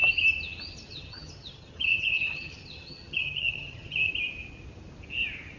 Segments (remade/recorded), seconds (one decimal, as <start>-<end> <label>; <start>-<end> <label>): 0.0-0.9 recorded; 0.9-4.1 remade; 4.1-5.6 recorded